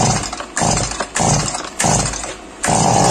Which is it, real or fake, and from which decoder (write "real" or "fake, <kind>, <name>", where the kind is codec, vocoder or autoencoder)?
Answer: real